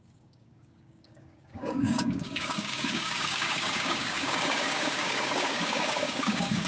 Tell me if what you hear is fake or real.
fake